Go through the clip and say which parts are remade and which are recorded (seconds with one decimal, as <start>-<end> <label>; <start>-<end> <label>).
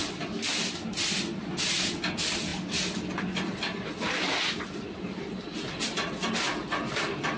0.0-7.4 recorded